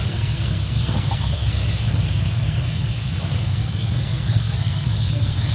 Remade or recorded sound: remade